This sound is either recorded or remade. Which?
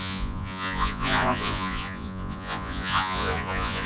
remade